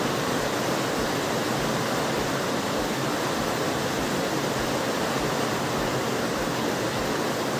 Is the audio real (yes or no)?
yes